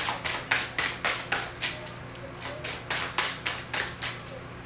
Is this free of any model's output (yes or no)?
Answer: yes